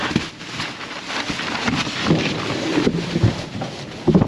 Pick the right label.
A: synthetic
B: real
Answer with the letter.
B